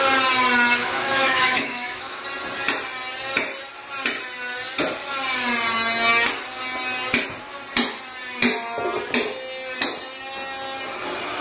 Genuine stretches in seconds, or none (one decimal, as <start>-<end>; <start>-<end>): 0.0-0.8; 2.2-11.4